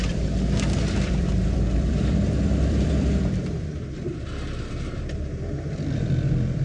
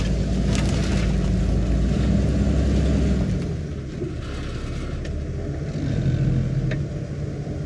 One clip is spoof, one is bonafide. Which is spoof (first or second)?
first